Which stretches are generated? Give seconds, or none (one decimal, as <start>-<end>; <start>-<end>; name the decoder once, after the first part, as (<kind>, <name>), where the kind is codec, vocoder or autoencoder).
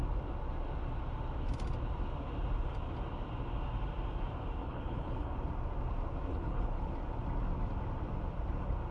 4.6-5.4 (codec, HILCodec); 6.3-6.9